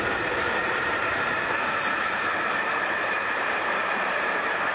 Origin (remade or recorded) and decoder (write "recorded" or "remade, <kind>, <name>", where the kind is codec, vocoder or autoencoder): remade, vocoder, BigVGAN v2